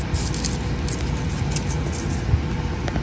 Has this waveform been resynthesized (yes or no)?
no